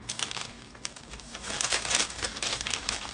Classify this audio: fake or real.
fake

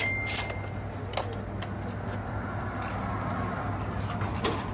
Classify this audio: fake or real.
real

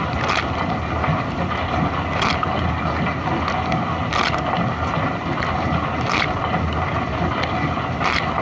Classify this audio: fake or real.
real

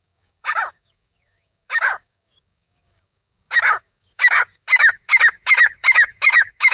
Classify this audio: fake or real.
fake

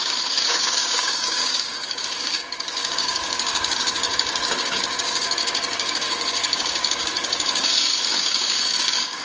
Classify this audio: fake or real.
fake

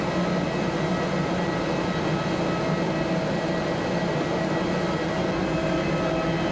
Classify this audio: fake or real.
real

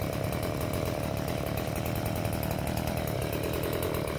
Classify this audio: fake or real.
real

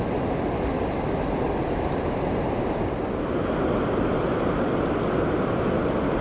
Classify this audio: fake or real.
real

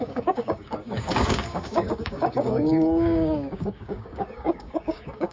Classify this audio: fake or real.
fake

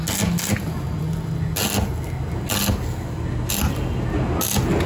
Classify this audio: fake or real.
real